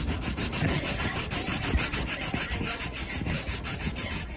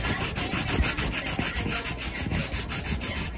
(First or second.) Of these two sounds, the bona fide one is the second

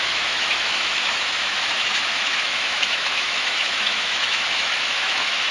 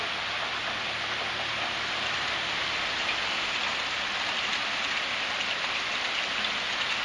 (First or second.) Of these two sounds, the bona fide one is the second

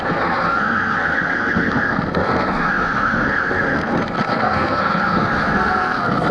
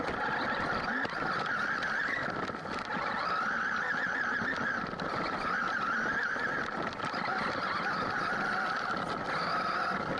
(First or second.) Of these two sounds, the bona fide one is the second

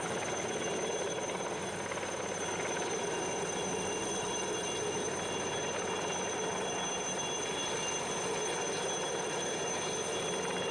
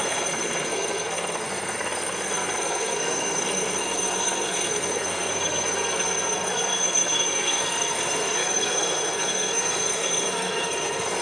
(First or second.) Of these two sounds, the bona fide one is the first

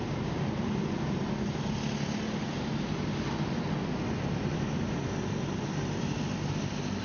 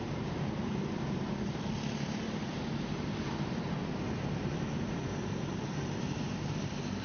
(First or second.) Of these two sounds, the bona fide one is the first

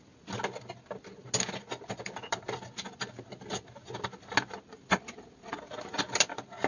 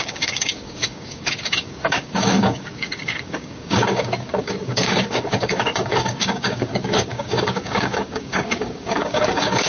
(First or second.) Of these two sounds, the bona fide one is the first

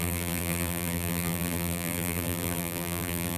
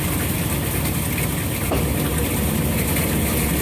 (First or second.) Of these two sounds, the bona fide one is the second